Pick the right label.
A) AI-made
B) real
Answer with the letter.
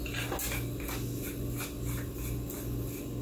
B